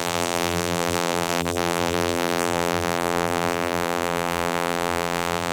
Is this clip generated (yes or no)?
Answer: yes